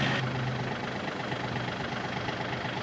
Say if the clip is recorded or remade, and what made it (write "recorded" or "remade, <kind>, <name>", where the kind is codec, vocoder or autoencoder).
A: recorded